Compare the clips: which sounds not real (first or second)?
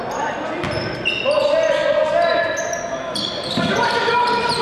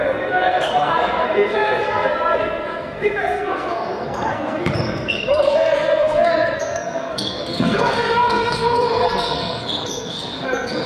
second